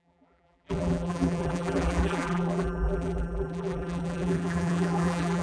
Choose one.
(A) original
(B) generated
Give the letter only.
B